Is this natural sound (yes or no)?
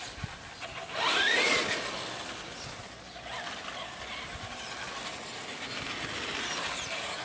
yes